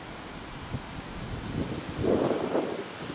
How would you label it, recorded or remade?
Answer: recorded